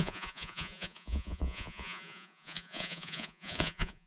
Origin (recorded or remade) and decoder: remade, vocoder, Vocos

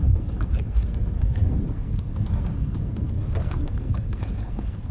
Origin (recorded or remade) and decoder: remade, codec, SNAC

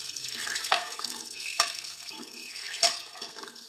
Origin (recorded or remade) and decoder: remade, codec, SNAC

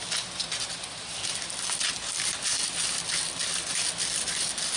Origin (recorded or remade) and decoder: recorded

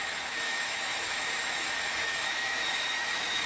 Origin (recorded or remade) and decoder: remade, autoencoder, DAC-VAE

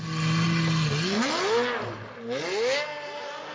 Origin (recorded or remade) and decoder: recorded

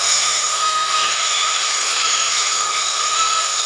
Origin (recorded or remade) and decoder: remade, autoencoder, DAC-VAE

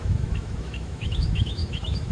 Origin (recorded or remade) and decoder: remade, autoencoder, DAC-VAE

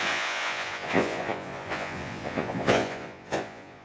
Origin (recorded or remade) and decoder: remade, vocoder, Vocos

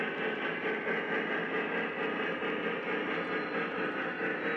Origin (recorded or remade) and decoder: recorded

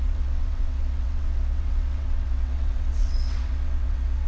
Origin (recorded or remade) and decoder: remade, vocoder, WaveNeXt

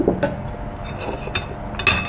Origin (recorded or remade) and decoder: recorded